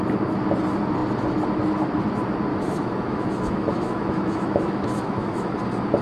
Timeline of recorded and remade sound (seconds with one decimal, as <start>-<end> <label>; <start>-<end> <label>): 0.0-2.5 recorded; 2.5-5.6 remade; 5.6-6.0 recorded